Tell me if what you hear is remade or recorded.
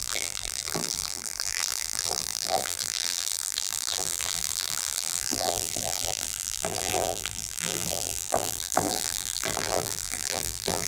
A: remade